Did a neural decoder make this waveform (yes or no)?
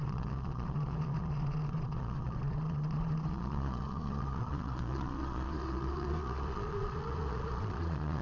yes